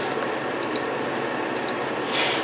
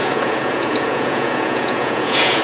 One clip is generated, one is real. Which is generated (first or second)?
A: second